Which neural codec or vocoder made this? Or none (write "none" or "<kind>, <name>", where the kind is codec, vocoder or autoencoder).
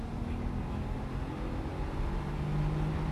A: none